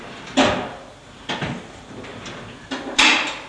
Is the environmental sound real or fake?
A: real